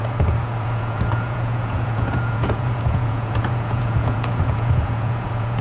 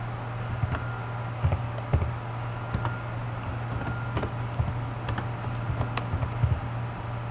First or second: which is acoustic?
second